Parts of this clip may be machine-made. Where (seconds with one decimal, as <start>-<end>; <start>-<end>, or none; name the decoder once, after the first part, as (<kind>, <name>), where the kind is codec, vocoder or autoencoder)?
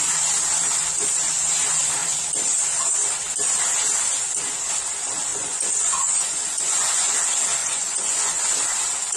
5.3-7.1 (vocoder, Vocos); 7.6-8.4